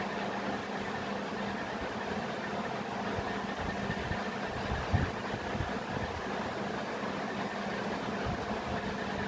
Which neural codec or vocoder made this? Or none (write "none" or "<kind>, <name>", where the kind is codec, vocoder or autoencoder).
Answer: none